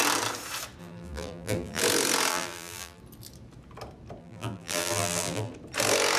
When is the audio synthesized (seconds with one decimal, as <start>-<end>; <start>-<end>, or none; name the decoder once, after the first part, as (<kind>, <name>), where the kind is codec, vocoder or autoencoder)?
0.8-1.8 (vocoder, BigVGAN v2); 2.3-3.0; 4.2-5.5